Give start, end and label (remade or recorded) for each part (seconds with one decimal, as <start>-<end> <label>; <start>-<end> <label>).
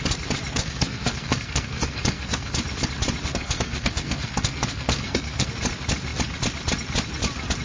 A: 0.0-0.5 recorded; 0.5-2.6 remade; 2.6-3.3 recorded; 3.3-5.5 remade; 5.5-7.6 recorded